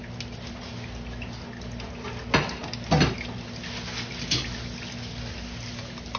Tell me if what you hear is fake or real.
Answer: real